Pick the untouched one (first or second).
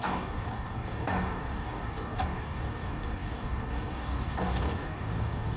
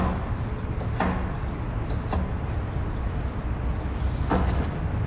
second